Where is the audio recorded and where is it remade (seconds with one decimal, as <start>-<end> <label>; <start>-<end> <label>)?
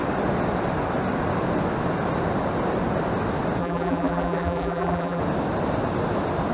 0.0-3.6 recorded; 3.6-5.2 remade; 5.2-6.5 recorded